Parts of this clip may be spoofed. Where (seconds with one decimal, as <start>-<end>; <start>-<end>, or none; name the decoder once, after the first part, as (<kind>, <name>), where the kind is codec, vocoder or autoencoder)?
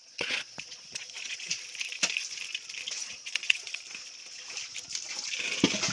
0.0-1.5 (vocoder, Vocos); 3.0-3.8